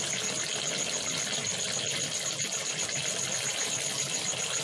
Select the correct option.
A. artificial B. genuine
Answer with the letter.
B